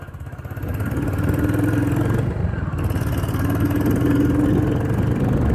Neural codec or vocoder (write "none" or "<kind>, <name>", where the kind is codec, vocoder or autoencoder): none